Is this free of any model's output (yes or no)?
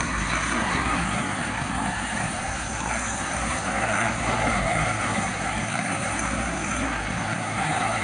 no